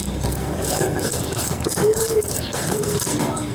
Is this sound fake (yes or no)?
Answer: yes